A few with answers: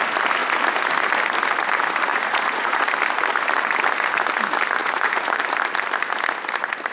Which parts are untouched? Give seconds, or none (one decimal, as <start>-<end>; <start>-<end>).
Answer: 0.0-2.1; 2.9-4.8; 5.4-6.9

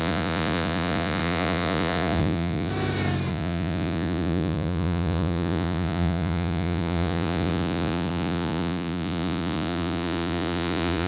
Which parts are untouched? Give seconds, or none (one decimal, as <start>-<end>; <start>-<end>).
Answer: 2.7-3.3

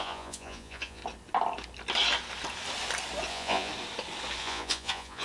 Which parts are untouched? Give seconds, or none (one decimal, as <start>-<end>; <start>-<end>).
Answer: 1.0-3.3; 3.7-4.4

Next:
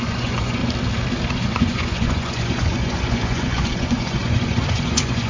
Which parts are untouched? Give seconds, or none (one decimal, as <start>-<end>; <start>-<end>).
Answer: 0.6-1.3

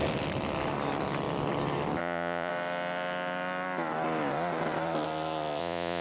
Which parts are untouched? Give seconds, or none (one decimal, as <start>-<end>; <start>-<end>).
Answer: 0.0-2.0; 2.5-5.6

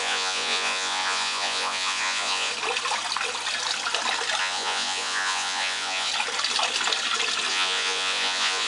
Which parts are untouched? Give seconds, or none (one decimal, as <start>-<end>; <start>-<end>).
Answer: 2.5-4.4; 6.1-7.5

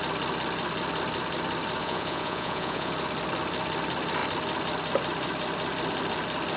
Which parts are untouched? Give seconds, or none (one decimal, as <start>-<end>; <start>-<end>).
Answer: 0.0-1.8; 2.9-6.6